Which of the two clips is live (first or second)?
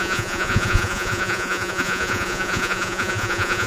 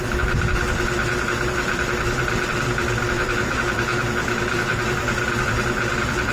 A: second